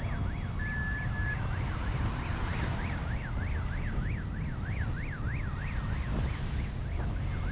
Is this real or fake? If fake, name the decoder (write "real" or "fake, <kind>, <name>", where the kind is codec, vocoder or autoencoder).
real